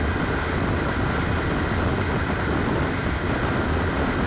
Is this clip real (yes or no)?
yes